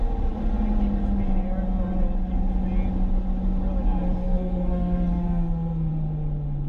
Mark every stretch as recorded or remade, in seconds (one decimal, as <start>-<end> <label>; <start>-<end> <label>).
0.0-4.2 recorded; 4.2-5.9 remade; 5.9-6.7 recorded